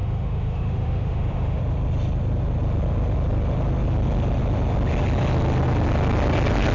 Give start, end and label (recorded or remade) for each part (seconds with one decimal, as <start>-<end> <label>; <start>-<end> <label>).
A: 0.0-1.6 remade; 1.6-6.7 recorded